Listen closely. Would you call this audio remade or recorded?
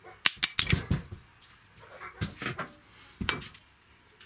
recorded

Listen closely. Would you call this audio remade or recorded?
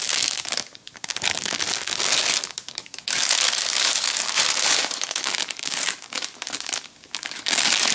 remade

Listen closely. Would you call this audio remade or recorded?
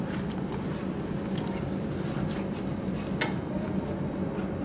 recorded